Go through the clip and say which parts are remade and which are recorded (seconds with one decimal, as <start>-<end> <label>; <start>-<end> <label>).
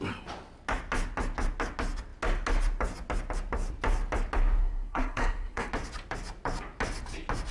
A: 0.0-4.6 recorded; 4.6-5.7 remade; 5.7-7.5 recorded